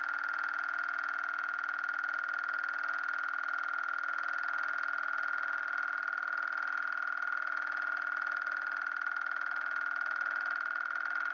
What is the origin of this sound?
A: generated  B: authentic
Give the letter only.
B